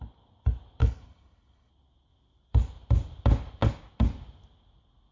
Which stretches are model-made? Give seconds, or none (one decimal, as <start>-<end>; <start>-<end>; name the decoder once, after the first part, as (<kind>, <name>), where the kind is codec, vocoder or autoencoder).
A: 0.8-1.7 (codec, HILCodec)